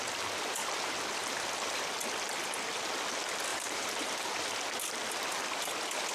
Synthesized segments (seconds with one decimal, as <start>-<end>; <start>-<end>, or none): 1.2-1.8; 3.5-4.3